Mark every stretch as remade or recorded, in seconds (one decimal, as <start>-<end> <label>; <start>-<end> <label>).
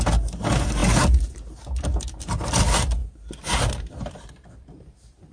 0.0-5.3 recorded